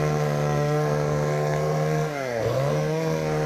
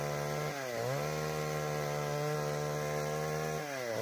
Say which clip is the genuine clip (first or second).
second